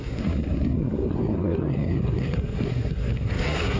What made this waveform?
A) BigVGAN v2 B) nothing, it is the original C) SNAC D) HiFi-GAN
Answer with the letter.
C